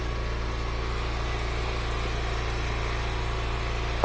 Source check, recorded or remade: recorded